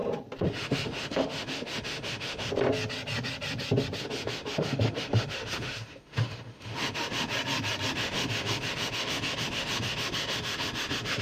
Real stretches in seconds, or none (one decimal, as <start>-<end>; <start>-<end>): 0.0-0.5; 2.5-4.0; 7.3-7.9